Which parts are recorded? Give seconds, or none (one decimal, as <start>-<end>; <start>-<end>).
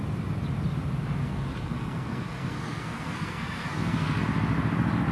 0.0-1.2; 4.2-5.1